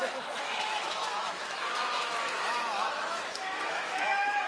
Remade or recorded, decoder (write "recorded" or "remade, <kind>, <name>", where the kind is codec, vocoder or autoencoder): remade, autoencoder, DAC-VAE